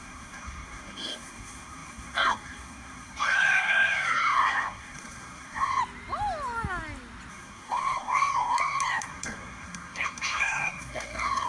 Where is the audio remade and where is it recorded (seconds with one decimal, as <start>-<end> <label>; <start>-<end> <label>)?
0.0-5.8 remade; 5.8-7.3 recorded; 7.3-11.5 remade